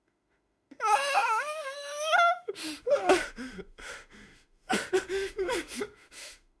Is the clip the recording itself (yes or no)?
no